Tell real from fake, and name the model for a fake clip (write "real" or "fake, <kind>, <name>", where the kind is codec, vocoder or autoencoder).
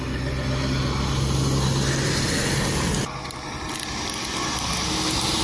real